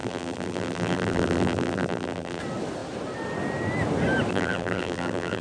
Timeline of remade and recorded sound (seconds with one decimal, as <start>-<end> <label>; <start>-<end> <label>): 0.0-2.4 remade; 2.4-4.3 recorded; 4.3-5.4 remade